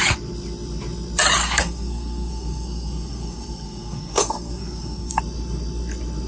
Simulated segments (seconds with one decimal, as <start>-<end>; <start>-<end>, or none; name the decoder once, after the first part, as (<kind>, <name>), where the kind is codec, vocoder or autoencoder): 1.4-5.2 (codec, SNAC)

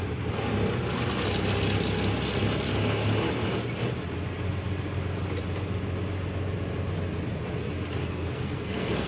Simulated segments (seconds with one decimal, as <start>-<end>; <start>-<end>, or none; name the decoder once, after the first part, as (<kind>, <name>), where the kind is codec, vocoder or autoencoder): 8.0-9.1 (codec, SNAC)

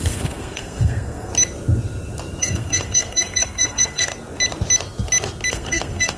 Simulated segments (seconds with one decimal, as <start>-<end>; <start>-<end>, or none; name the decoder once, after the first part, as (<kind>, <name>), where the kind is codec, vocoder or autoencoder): 0.0-1.3 (codec, SNAC); 2.4-4.1; 5.5-6.2

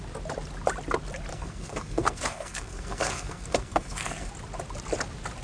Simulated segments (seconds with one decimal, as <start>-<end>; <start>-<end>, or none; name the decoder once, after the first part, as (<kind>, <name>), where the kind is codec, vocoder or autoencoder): 1.3-4.3 (codec, SNAC)

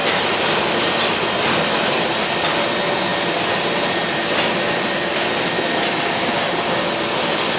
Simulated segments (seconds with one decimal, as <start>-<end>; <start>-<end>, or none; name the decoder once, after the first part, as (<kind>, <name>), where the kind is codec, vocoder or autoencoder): none

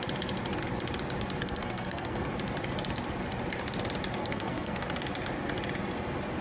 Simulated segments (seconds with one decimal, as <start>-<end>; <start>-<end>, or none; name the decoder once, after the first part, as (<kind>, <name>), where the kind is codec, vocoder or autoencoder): 1.4-2.3 (codec, SNAC); 4.2-4.8

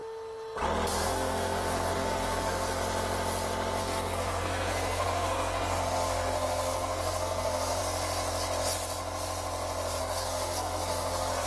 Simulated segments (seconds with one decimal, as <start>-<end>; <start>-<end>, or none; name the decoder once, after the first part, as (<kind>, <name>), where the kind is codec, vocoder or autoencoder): 0.9-2.8 (codec, SNAC); 3.8-7.8; 10.0-11.5

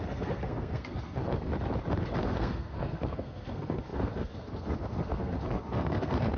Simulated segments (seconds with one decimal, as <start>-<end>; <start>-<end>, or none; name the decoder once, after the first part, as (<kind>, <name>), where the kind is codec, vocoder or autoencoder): 0.0-1.5 (codec, SNAC); 2.2-6.4